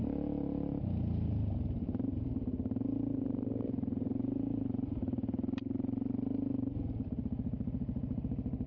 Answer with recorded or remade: recorded